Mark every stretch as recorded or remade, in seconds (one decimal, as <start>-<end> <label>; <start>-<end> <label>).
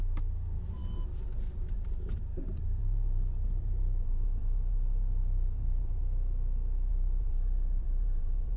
0.0-6.0 remade; 6.0-6.9 recorded; 6.9-8.6 remade